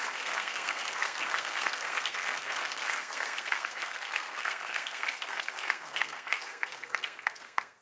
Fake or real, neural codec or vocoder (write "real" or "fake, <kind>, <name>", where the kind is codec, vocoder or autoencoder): fake, codec, SNAC